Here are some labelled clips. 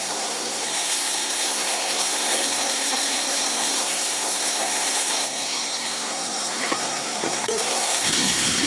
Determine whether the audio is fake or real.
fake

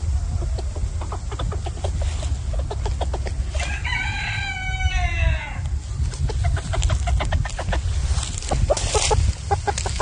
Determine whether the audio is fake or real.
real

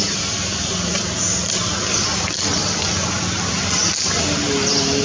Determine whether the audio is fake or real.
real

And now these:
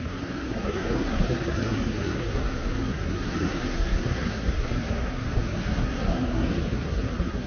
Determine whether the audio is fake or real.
fake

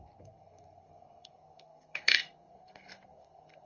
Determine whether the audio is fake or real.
fake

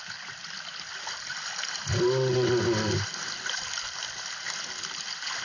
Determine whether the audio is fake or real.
real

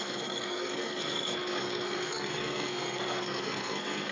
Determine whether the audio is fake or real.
fake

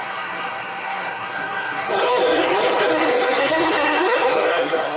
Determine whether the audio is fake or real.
fake